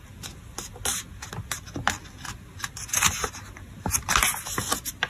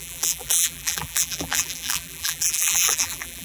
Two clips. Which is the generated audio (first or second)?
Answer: second